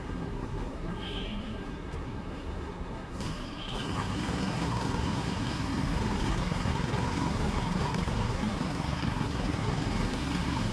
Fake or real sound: fake